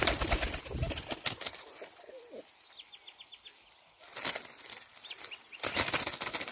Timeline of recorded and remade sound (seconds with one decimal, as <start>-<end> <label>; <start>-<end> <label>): 0.0-6.5 recorded